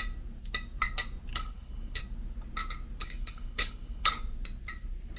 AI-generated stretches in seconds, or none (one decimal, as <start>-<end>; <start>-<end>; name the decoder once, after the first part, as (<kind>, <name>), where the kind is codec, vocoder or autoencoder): 1.3-2.0 (codec, HILCodec); 3.0-4.1